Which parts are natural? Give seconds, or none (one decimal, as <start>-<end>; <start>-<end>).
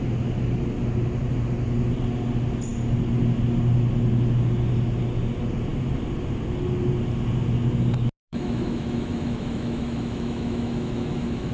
0.0-8.2